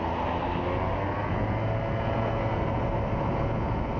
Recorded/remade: recorded